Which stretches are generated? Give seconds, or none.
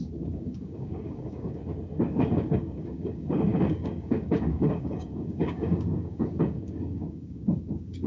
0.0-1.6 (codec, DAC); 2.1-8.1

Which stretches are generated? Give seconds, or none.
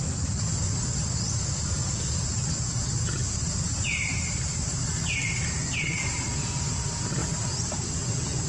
3.2-5.3 (vocoder, BigVGAN v2); 7.2-8.5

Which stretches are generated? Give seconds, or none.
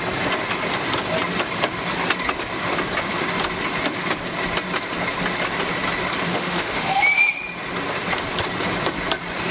6.3-7.0 (autoencoder, DAC-VAE)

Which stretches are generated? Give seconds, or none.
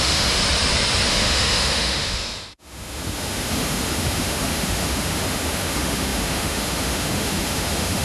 0.0-0.4 (autoencoder, DAC-VAE); 1.1-8.0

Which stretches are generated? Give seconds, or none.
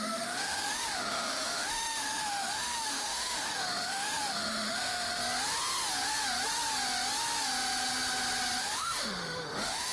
0.0-5.2 (autoencoder, DAC-VAE); 8.6-9.9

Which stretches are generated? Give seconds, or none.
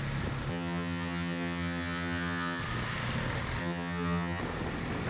0.5-2.6 (vocoder, HiFi-GAN); 3.6-4.4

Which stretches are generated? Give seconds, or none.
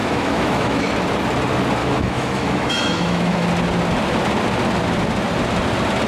0.0-0.9 (autoencoder, DAC-VAE); 1.8-3.5